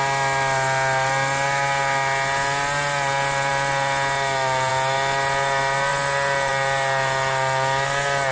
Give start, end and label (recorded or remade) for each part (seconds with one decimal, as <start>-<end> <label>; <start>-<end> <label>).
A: 0.0-8.3 recorded